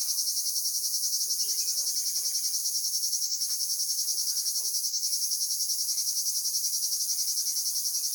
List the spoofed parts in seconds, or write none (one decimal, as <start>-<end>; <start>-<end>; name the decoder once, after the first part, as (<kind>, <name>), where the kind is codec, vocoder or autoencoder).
0.0-1.2 (autoencoder, DAC-VAE); 2.6-7.0